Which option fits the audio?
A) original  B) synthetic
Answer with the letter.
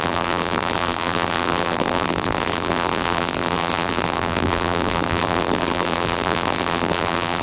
B